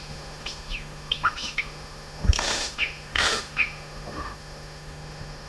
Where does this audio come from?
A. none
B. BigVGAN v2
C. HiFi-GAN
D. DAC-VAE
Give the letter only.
D